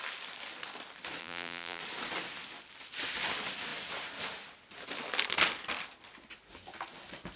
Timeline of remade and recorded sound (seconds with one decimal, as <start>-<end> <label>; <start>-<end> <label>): 0.0-1.2 recorded; 1.2-1.8 remade; 1.8-7.4 recorded